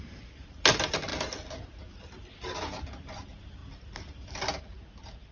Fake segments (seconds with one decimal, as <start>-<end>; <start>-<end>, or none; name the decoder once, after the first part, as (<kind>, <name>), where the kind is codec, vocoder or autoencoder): none